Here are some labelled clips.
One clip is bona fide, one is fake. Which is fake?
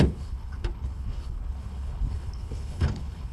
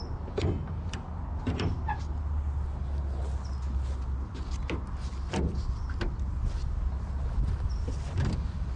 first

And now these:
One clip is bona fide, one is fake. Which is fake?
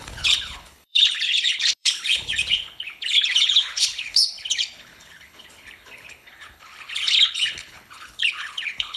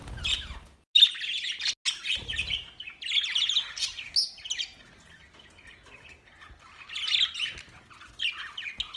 first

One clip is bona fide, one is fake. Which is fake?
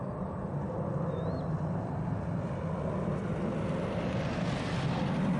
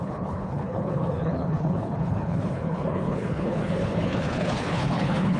second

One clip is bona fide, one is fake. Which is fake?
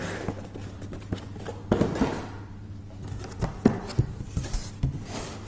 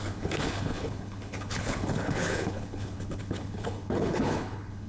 second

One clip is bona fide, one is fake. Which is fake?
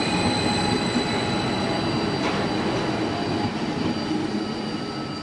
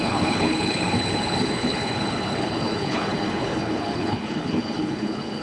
second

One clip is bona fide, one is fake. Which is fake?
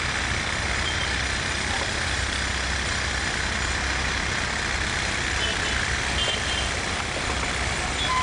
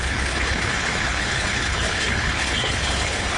second